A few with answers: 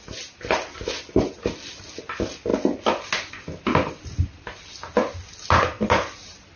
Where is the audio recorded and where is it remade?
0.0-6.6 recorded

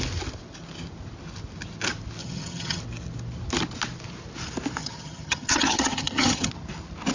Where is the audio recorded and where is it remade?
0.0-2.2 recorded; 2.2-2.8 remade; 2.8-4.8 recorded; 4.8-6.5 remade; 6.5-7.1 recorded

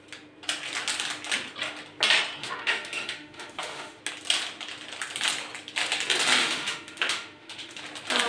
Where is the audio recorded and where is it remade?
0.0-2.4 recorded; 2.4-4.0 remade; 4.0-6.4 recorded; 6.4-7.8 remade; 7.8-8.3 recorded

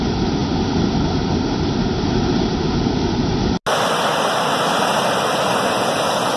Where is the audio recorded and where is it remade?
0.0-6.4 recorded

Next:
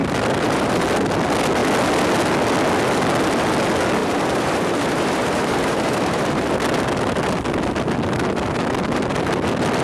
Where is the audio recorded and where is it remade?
0.0-4.0 recorded; 4.0-6.5 remade; 6.5-9.8 recorded

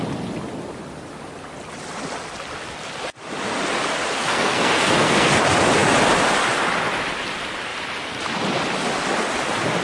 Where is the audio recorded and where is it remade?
0.0-4.2 recorded; 4.2-5.3 remade; 5.3-9.8 recorded